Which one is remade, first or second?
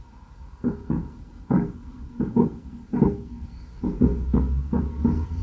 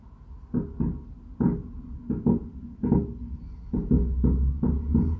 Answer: first